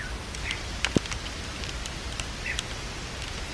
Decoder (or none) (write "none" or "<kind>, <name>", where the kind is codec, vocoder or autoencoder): none